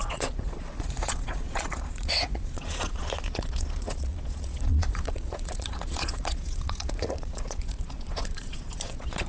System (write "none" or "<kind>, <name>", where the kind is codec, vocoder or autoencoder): vocoder, Vocos